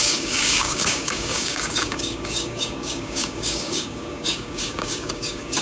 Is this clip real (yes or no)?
no